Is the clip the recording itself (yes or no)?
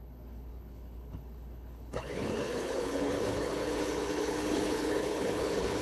no